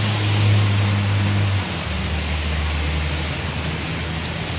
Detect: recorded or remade recorded